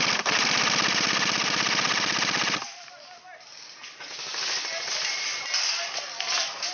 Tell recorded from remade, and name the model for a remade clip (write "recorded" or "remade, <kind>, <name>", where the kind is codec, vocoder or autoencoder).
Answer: recorded